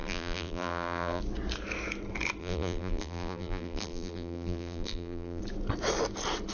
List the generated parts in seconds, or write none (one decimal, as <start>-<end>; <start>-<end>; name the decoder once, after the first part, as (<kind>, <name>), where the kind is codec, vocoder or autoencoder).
0.0-1.2 (vocoder, BigVGAN v2); 2.4-5.4